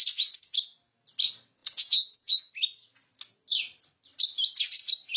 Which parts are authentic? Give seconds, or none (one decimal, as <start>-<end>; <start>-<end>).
0.0-1.6; 2.5-5.2